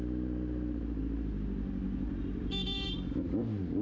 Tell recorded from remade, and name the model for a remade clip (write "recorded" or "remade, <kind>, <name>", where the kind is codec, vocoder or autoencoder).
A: recorded